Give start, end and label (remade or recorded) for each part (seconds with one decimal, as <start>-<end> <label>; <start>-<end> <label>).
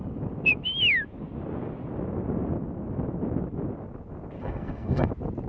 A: 0.0-4.4 recorded; 4.4-5.1 remade; 5.1-5.5 recorded